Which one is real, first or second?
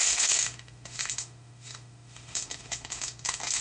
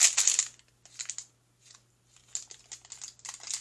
second